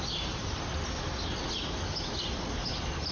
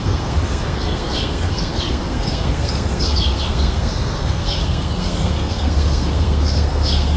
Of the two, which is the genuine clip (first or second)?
first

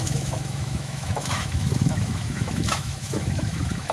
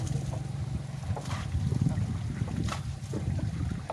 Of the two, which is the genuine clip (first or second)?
second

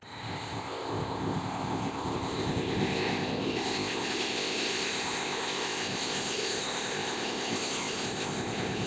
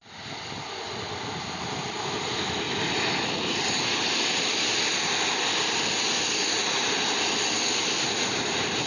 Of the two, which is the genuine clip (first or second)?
second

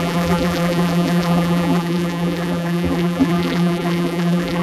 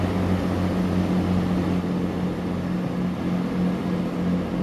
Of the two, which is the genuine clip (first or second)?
second